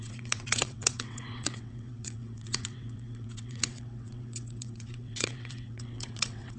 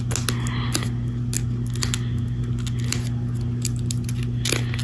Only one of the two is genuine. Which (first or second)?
second